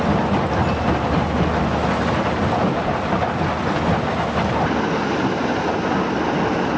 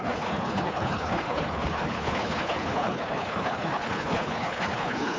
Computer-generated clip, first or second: second